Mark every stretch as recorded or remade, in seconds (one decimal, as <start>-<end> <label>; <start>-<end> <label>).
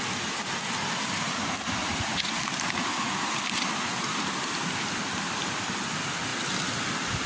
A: 0.0-1.8 recorded; 1.8-2.4 remade; 2.4-2.9 recorded; 2.9-3.4 remade; 3.4-7.3 recorded